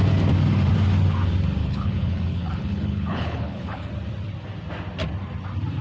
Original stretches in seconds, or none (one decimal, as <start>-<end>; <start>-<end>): 0.0-1.6; 3.9-5.8